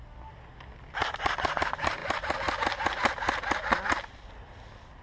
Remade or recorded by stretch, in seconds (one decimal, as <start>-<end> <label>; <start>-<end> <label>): 0.0-5.0 recorded